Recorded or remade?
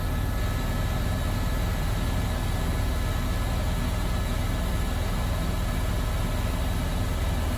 recorded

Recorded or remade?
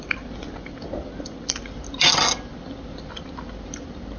recorded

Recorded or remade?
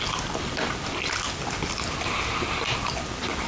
recorded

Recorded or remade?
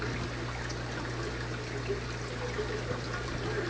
recorded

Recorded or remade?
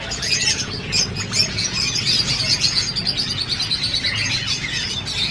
remade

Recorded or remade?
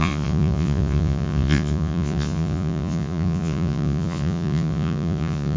remade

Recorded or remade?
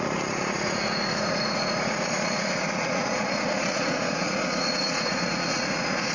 remade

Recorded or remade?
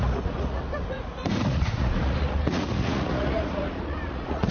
remade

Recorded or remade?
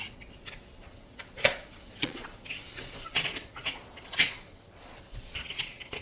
remade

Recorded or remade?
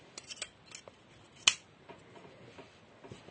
recorded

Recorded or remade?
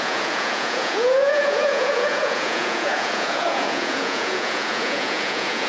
remade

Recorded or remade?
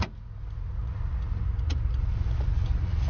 remade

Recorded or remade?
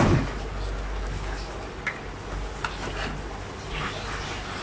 recorded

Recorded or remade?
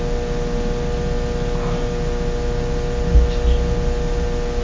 recorded